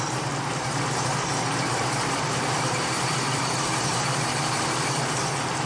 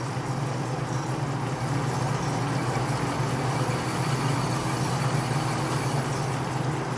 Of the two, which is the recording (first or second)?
second